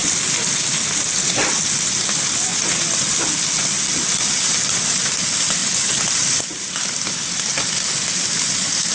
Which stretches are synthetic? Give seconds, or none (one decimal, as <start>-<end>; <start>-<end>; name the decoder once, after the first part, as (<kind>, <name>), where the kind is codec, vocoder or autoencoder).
2.5-3.2 (vocoder, BigVGAN v2); 5.6-7.1